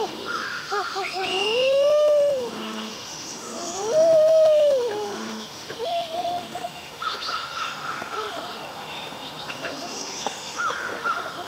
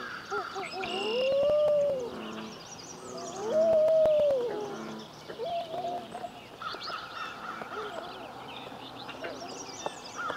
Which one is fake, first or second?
first